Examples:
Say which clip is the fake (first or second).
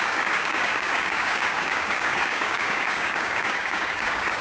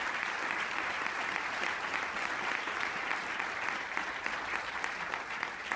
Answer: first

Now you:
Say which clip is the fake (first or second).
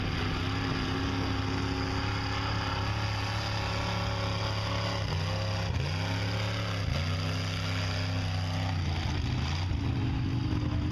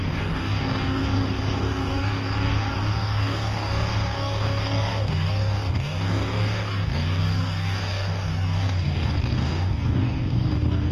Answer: second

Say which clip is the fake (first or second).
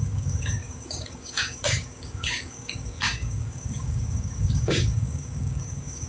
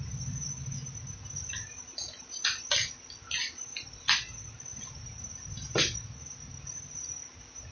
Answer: first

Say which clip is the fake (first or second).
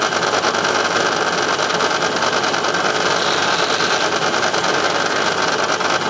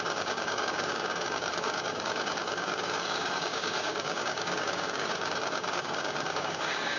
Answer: second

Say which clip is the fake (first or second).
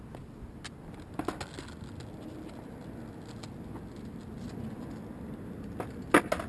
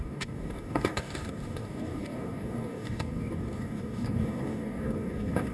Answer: second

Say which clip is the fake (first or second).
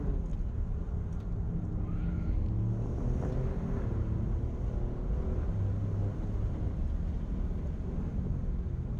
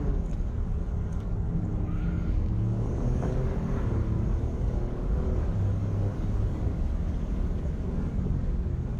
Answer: second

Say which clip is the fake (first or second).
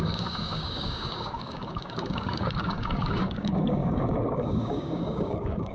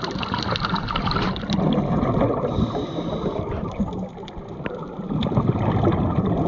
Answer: first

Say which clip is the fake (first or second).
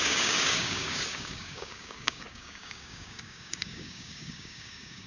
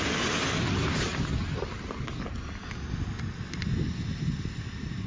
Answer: first